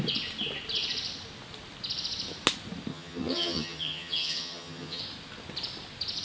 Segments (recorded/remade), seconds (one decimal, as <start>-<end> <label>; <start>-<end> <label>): 0.0-2.9 recorded; 2.9-5.0 remade; 5.0-6.2 recorded